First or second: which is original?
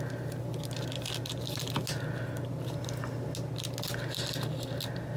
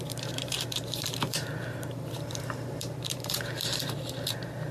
first